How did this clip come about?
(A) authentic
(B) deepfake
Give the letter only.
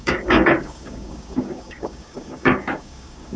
B